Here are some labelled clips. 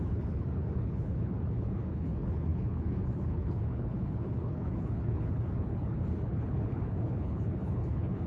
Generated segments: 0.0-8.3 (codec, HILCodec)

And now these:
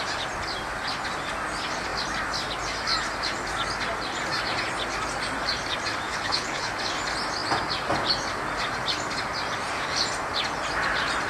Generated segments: 6.1-6.7 (codec, HILCodec)

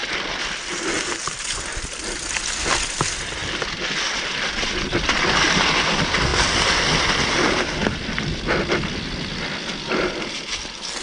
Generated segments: none

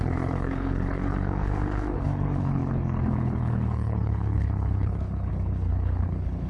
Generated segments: 0.0-6.5 (codec, HILCodec)

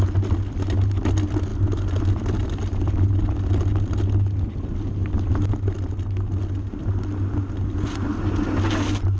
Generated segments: none

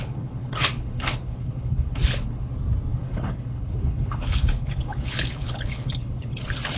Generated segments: 0.0-2.5 (codec, HILCodec); 2.9-6.8